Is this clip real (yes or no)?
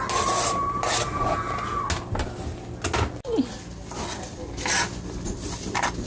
yes